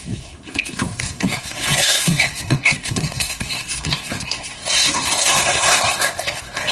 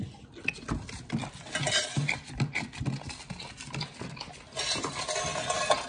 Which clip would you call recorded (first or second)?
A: second